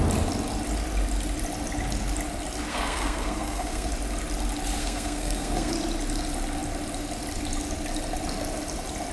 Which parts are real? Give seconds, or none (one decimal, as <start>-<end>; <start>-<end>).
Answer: 0.0-2.7; 3.9-4.8; 5.7-9.1